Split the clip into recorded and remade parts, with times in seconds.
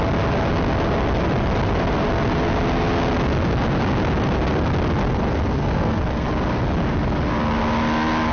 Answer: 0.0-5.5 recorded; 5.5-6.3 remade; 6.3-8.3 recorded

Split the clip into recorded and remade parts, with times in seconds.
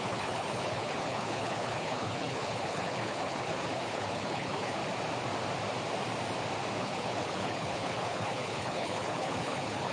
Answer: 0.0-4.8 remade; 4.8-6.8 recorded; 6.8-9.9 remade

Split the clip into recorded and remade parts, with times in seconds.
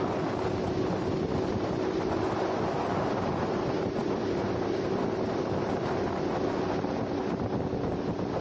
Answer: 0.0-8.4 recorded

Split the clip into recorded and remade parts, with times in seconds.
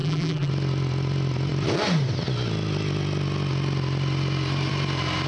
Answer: 0.0-0.5 remade; 0.5-5.3 recorded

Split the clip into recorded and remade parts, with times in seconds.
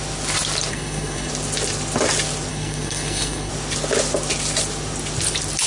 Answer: 0.0-0.7 recorded; 0.7-1.3 remade; 1.3-2.5 recorded; 2.5-3.5 remade; 3.5-5.7 recorded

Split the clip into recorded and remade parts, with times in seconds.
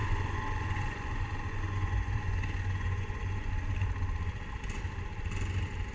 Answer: 0.0-3.5 remade; 3.5-5.9 recorded